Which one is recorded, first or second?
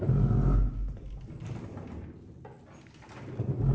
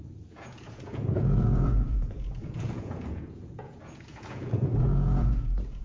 first